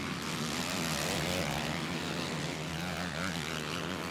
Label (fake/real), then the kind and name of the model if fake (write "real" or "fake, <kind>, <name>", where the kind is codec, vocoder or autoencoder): real